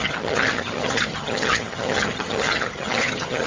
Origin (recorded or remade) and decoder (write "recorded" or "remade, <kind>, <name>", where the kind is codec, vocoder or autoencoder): remade, vocoder, HiFi-GAN